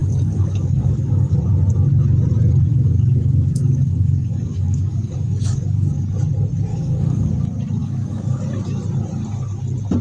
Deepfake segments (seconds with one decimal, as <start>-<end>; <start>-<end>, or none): 0.0-1.4; 2.7-6.0; 6.7-7.3; 7.8-8.4